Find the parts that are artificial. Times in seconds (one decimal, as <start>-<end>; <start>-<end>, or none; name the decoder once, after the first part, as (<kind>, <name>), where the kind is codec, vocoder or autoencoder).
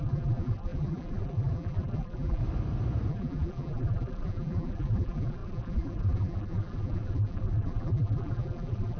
0.0-2.4 (vocoder, BigVGAN v2); 3.1-9.0